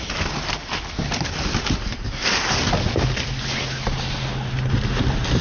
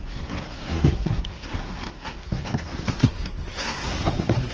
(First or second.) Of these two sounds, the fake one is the second